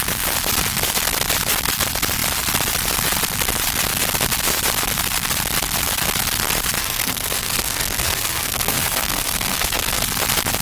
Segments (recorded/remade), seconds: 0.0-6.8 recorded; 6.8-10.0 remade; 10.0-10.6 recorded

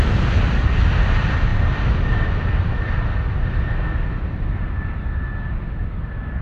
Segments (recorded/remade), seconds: 0.0-6.4 recorded

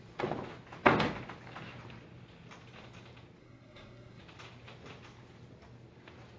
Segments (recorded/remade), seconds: 0.0-3.4 recorded; 3.4-4.2 remade; 4.2-6.4 recorded

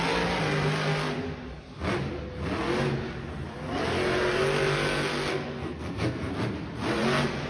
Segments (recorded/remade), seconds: 0.0-5.3 recorded; 5.3-6.3 remade; 6.3-7.5 recorded

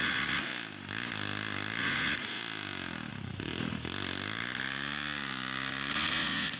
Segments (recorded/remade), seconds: 0.0-0.5 remade; 0.5-1.8 recorded; 1.8-2.4 remade; 2.4-3.1 recorded; 3.1-3.5 remade; 3.5-5.9 recorded; 5.9-6.6 remade